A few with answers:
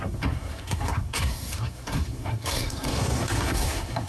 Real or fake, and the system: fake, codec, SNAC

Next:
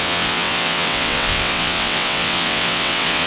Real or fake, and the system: fake, vocoder, WaveNeXt